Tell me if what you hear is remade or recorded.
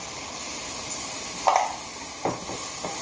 recorded